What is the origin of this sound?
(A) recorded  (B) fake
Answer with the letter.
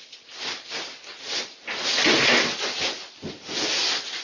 A